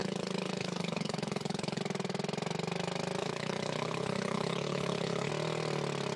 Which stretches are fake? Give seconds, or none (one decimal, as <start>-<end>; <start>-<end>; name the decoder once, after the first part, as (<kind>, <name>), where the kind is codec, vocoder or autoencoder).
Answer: 0.0-1.8 (codec, HILCodec); 3.2-5.3